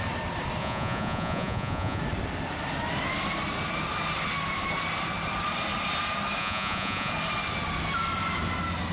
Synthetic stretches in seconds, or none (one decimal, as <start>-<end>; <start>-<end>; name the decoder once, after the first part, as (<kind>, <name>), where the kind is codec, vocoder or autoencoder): 0.6-2.0 (vocoder, Vocos); 6.4-7.1